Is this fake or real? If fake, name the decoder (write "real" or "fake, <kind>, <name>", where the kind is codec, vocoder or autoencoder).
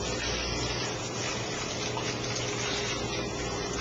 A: real